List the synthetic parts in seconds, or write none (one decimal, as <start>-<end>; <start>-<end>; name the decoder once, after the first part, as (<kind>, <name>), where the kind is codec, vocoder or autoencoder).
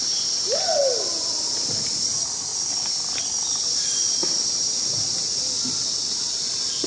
2.5-4.0 (vocoder, BigVGAN v2)